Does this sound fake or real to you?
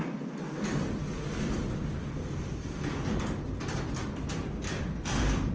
real